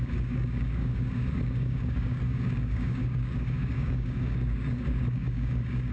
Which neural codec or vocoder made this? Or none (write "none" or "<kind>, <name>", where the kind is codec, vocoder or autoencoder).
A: codec, DAC